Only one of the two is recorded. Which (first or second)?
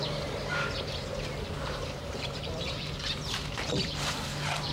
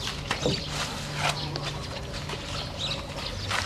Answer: second